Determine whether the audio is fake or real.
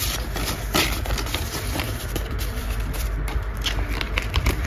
fake